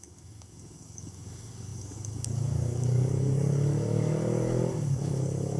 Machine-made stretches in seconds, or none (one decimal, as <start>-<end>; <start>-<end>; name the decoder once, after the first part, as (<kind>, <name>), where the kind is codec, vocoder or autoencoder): 0.0-5.6 (codec, DAC)